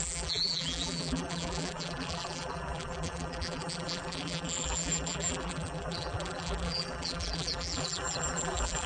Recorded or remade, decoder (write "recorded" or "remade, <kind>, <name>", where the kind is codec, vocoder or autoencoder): remade, vocoder, BigVGAN v2